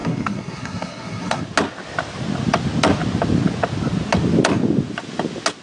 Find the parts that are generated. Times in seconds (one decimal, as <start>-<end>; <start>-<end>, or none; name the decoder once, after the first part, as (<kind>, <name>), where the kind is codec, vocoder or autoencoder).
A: 0.0-1.4 (codec, SNAC)